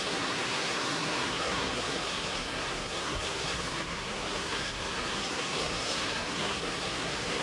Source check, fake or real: fake